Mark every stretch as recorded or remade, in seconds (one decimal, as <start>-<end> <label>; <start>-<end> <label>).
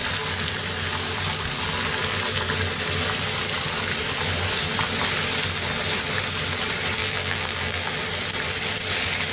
0.0-7.0 recorded; 7.0-7.9 remade; 7.9-9.3 recorded